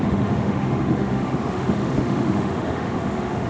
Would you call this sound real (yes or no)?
no